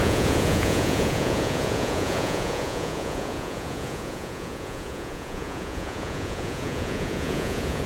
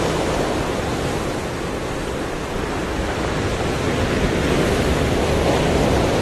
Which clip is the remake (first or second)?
first